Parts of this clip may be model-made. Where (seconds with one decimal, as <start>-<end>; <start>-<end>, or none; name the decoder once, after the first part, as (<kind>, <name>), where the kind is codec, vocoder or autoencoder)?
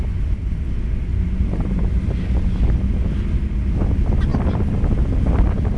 1.1-1.8 (vocoder, BigVGAN v2)